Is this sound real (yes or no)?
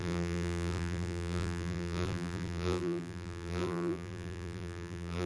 no